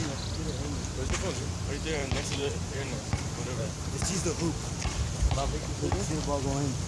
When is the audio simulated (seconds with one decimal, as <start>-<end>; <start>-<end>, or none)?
2.0-3.2

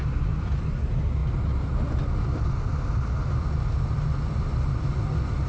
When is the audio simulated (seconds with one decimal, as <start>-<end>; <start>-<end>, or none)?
none

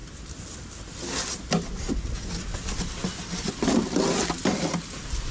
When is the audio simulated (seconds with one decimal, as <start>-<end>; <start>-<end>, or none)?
0.0-0.7

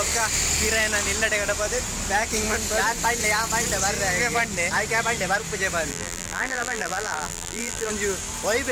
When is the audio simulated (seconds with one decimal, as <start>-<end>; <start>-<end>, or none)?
5.9-7.9

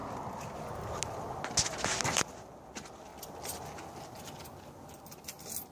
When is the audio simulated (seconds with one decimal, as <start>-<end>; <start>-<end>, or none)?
none

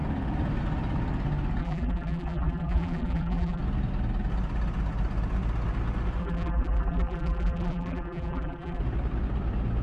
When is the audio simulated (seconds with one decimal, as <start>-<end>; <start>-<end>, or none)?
1.6-3.6; 6.2-8.8

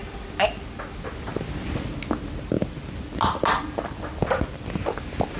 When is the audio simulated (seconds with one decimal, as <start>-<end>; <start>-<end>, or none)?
none